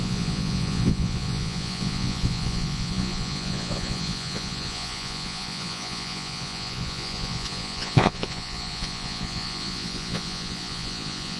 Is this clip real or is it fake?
fake